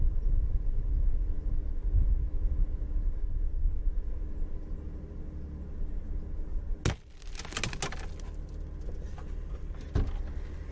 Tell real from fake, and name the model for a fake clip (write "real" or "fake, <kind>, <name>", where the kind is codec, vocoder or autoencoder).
real